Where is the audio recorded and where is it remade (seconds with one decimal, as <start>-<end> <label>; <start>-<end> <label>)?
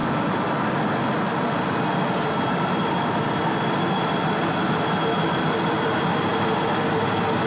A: 0.0-7.5 recorded